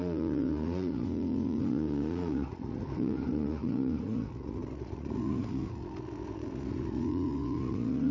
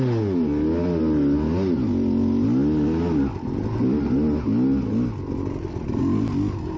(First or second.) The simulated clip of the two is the first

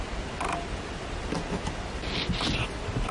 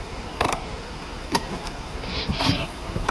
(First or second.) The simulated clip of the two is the second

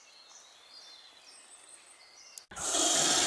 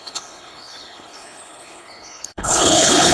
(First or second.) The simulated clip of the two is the second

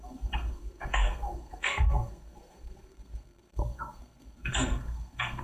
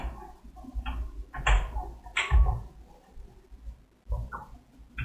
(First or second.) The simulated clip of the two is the first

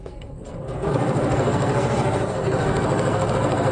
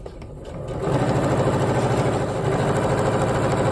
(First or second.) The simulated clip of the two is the first